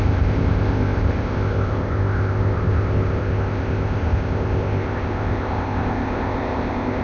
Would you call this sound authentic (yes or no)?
no